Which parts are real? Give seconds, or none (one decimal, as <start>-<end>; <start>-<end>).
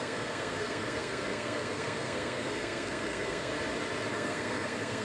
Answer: 3.5-4.1